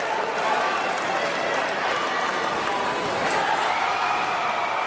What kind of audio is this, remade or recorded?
remade